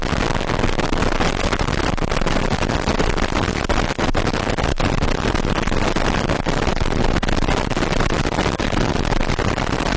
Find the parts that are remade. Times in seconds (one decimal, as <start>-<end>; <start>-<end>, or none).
none